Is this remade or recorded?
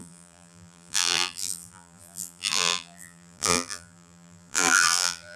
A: remade